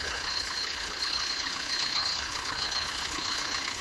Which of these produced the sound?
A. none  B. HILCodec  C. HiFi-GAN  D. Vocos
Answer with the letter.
B